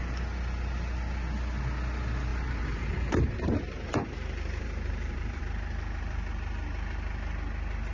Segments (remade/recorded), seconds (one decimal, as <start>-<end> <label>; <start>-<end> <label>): 0.0-2.3 recorded; 2.3-5.4 remade; 5.4-7.9 recorded